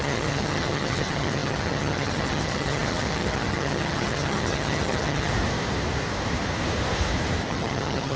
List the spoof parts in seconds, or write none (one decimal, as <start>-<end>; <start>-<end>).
0.0-5.3; 7.5-8.2

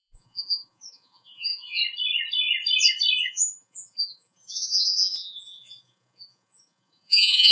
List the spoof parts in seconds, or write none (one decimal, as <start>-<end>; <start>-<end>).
0.0-1.8; 3.3-7.5

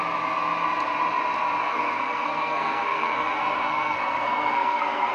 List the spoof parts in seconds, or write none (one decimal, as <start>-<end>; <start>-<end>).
1.6-5.1

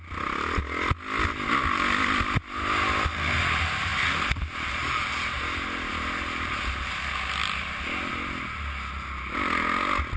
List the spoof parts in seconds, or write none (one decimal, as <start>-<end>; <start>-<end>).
3.9-5.9; 7.4-8.1

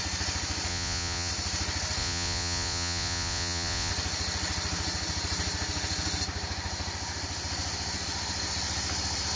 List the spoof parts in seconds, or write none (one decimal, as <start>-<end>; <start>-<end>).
0.7-1.3; 2.0-3.9